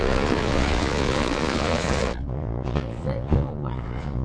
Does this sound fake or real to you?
fake